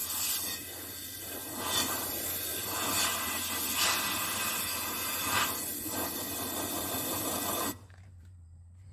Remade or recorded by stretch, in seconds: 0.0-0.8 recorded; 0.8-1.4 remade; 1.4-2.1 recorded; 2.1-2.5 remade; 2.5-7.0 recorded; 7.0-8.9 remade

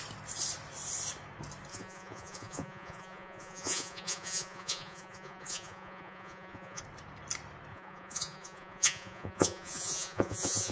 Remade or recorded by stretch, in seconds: 0.0-1.7 recorded; 1.7-6.8 remade; 6.8-7.7 recorded; 7.7-10.7 remade